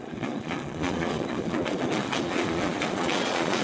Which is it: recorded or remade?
remade